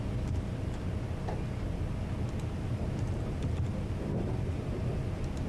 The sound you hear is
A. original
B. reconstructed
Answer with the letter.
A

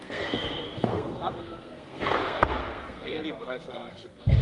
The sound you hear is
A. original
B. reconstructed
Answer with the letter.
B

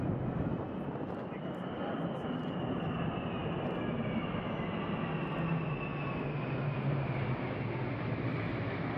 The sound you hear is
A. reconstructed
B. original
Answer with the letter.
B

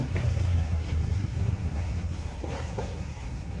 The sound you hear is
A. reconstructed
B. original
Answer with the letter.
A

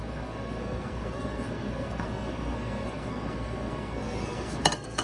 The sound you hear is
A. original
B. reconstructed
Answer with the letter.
B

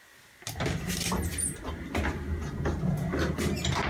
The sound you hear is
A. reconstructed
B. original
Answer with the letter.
B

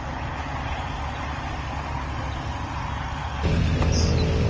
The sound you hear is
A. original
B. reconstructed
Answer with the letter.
A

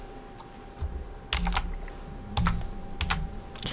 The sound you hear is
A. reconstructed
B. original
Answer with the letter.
B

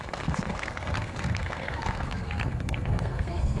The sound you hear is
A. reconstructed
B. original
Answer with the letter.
A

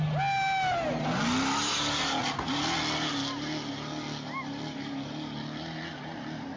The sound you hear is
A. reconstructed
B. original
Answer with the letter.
B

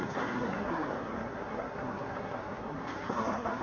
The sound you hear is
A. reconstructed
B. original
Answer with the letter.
A